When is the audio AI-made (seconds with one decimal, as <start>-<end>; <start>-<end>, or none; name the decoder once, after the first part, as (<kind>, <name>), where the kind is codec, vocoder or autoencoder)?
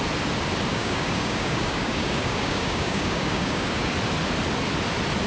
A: 0.7-3.9 (codec, DAC)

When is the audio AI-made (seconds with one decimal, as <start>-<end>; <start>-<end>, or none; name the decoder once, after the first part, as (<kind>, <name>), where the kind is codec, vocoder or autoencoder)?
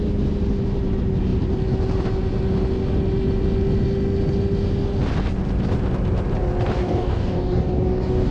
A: 6.8-8.3 (codec, DAC)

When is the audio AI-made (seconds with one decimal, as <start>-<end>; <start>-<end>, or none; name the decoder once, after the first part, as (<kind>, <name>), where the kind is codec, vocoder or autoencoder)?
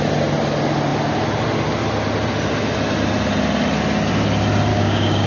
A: 4.7-5.3 (codec, DAC)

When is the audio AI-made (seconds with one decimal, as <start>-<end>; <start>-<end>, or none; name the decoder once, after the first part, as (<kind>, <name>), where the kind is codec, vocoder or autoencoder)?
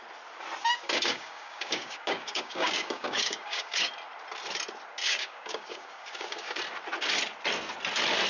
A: 0.6-3.9 (codec, DAC); 5.0-6.6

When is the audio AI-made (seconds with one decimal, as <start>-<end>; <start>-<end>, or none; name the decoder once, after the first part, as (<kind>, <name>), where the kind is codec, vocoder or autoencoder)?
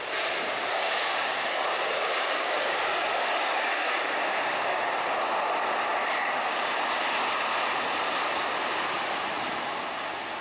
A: 0.6-4.8 (codec, DAC)